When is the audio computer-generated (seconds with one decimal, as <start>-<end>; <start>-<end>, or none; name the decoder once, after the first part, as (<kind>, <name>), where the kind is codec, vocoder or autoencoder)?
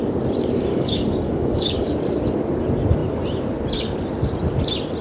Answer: 0.7-1.9 (codec, DAC)